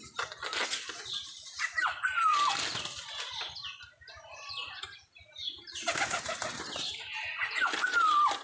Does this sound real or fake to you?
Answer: real